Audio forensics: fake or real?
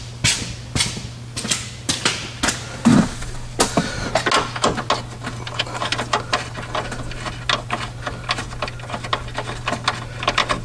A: real